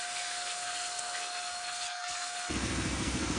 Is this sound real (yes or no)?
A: no